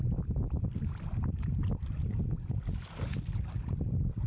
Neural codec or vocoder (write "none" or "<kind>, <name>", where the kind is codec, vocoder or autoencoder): none